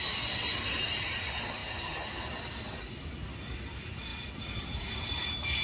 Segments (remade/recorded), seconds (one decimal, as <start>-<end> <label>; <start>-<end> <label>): 0.0-5.6 recorded